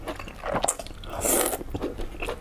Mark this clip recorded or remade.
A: recorded